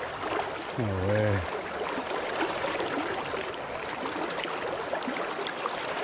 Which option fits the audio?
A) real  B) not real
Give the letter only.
A